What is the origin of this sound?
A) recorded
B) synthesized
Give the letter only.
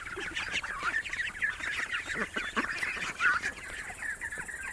B